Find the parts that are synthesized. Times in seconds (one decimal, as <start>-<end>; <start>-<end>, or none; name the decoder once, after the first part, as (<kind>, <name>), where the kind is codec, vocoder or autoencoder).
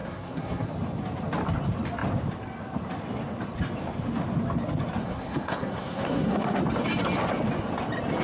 0.0-0.7 (codec, SNAC); 5.0-6.6